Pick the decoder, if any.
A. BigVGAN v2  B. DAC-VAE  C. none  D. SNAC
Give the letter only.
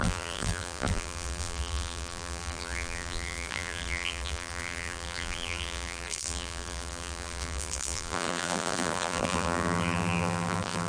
A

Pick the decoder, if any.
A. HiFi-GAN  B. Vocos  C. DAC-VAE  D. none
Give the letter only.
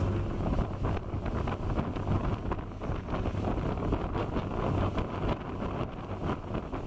D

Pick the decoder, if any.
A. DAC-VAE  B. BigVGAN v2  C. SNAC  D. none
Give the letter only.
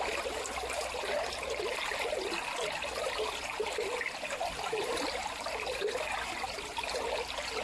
D